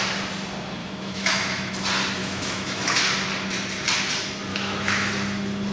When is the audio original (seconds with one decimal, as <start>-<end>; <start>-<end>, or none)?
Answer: 0.0-0.8; 1.7-2.2; 3.0-4.5; 5.1-5.7